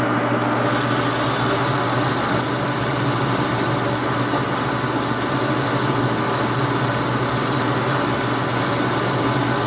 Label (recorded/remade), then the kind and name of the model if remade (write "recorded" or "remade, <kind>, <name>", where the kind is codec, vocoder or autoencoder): recorded